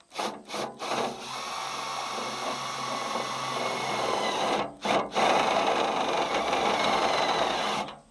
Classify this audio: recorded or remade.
recorded